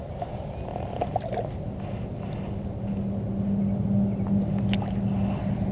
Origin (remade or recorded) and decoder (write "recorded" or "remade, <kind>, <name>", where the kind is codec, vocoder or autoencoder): recorded